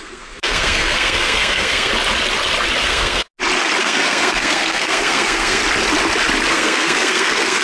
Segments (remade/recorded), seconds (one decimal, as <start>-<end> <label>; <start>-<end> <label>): 0.0-1.9 remade; 1.9-2.8 recorded; 2.8-3.3 remade; 3.3-3.8 recorded; 3.8-5.6 remade; 5.6-6.5 recorded; 6.5-7.6 remade